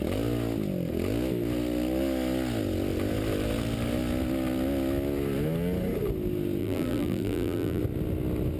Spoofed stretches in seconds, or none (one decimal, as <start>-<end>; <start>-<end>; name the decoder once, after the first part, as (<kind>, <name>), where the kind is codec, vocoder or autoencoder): 6.6-7.8 (vocoder, BigVGAN v2)

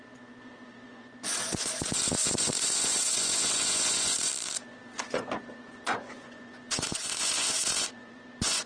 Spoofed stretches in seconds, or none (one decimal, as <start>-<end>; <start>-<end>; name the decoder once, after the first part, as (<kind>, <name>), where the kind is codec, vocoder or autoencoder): 0.0-4.3 (vocoder, Vocos); 5.0-8.7

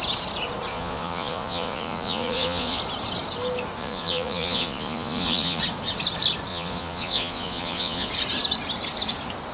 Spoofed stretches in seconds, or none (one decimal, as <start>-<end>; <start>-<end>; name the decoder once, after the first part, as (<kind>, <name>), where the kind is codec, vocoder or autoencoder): 0.7-2.8 (vocoder, Vocos); 3.8-5.6; 6.5-8.1

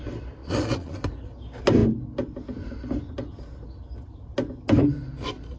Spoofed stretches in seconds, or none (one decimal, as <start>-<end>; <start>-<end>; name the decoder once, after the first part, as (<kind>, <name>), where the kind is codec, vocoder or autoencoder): 0.4-1.0 (vocoder, Vocos)

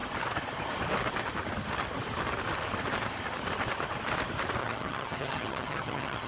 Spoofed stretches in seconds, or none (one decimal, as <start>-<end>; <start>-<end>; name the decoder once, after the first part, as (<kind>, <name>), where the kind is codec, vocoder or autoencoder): 4.6-6.3 (vocoder, HiFi-GAN)